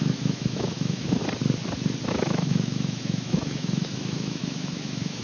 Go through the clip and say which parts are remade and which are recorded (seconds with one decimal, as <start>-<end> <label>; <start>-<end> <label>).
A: 0.0-1.2 remade; 1.2-2.1 recorded; 2.1-5.2 remade